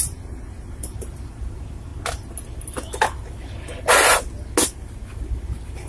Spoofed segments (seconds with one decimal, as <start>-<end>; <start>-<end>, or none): 0.0-1.9; 5.4-5.9